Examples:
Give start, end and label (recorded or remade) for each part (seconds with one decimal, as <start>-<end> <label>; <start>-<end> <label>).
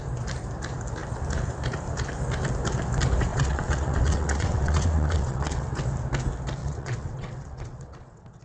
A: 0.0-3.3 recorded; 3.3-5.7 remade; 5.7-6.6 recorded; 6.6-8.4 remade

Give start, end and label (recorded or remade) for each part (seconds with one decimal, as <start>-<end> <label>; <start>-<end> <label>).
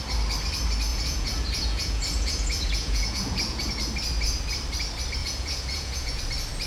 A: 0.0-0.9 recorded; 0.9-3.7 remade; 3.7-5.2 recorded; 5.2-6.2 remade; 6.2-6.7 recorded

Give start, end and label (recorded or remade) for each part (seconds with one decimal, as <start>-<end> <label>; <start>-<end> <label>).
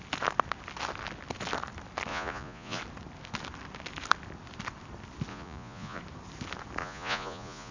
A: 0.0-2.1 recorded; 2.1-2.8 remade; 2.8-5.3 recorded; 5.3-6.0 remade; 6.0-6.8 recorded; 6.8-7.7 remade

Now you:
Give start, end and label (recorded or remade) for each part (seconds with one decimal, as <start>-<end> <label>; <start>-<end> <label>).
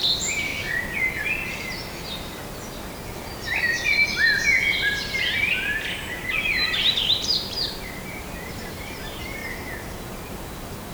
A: 0.0-0.5 remade; 0.5-2.0 recorded; 2.0-2.4 remade; 2.4-6.5 recorded; 6.5-9.4 remade; 9.4-10.9 recorded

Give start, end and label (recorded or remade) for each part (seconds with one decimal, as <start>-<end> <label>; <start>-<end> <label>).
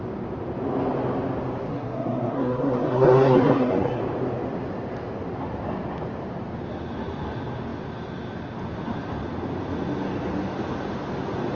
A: 0.0-1.7 recorded; 1.7-4.0 remade; 4.0-11.5 recorded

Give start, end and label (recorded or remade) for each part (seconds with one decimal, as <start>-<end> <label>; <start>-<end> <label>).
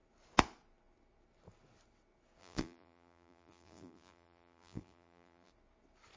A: 0.0-2.4 recorded; 2.4-5.5 remade; 5.5-6.2 recorded